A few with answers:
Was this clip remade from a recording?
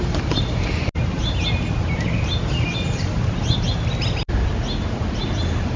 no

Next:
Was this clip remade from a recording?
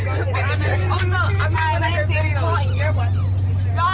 no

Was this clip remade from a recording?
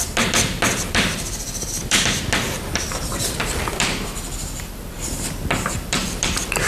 yes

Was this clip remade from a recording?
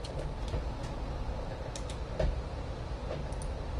no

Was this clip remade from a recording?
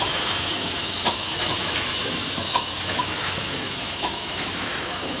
yes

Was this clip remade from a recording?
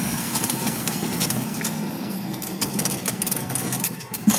yes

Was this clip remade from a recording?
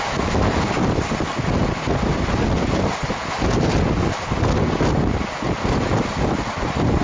no